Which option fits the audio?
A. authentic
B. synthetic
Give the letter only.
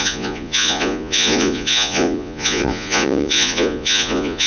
B